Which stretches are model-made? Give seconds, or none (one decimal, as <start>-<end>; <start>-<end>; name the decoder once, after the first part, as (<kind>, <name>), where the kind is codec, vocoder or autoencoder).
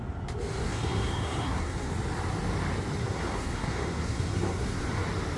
0.6-1.9 (codec, SNAC); 3.0-4.8